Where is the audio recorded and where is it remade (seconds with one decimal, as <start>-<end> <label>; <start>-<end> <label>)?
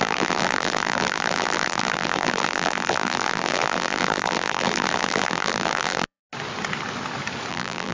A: 0.0-6.2 remade; 6.2-7.5 recorded; 7.5-7.9 remade